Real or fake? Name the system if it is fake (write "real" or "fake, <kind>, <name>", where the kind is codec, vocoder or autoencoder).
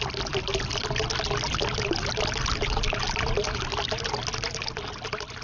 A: real